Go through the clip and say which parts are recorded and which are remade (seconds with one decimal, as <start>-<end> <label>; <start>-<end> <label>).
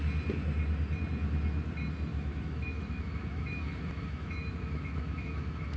0.0-2.1 recorded; 2.1-5.8 remade